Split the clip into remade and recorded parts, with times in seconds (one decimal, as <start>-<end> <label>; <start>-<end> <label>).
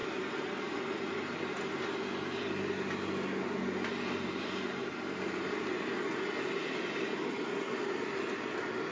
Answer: 0.0-8.9 recorded